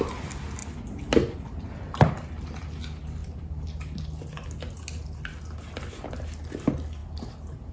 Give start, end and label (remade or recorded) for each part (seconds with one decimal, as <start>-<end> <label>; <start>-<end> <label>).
0.0-7.7 recorded